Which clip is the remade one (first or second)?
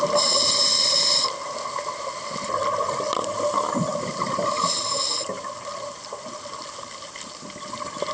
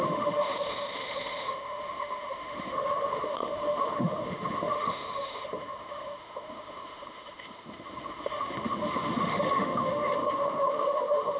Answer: second